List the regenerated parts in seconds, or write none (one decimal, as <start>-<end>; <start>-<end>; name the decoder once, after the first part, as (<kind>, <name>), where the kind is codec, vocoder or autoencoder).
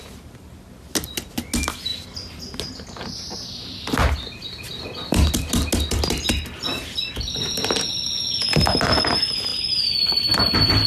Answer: none